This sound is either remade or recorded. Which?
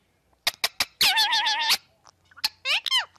recorded